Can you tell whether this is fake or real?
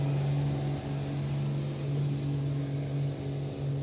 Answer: real